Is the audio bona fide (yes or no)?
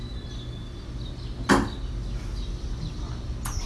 yes